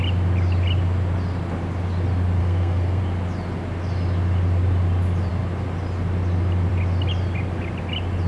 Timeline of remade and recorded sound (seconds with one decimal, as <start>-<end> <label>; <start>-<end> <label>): 0.0-2.4 recorded; 2.4-3.0 remade; 3.0-8.3 recorded